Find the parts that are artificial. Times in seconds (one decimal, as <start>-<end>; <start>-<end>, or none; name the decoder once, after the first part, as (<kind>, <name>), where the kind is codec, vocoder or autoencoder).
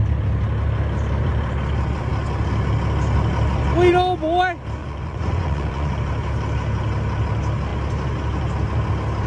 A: 4.8-5.9 (vocoder, Vocos)